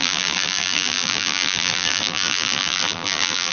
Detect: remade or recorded remade